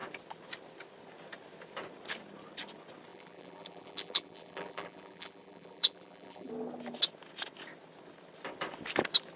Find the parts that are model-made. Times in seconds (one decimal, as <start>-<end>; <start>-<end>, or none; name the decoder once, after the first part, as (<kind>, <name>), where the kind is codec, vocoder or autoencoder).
3.1-6.5 (vocoder, BigVGAN v2)